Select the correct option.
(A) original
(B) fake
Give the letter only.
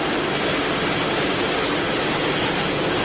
A